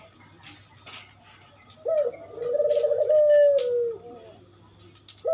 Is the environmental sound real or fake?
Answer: real